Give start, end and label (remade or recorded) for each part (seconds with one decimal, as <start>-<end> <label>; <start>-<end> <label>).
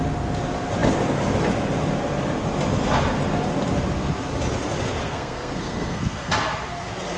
0.0-5.0 recorded; 5.0-6.3 remade; 6.3-7.2 recorded